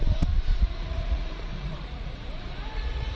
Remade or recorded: remade